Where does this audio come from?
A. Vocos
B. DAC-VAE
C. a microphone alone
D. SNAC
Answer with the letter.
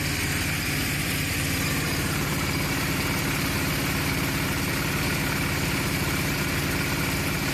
C